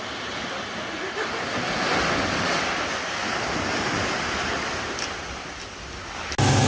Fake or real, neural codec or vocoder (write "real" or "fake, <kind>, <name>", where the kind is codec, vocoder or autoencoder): real